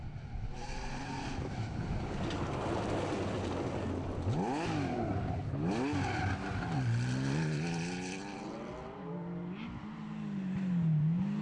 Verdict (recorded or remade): recorded